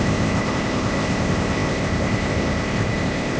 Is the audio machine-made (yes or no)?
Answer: yes